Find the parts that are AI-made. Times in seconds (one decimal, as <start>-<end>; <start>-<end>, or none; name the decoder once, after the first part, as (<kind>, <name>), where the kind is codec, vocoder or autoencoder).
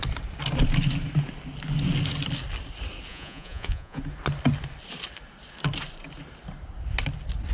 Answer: 3.1-4.0 (vocoder, Vocos)